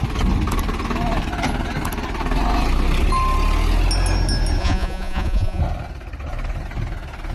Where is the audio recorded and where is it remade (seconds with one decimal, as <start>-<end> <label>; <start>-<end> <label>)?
0.0-4.6 recorded; 4.6-5.6 remade; 5.6-7.3 recorded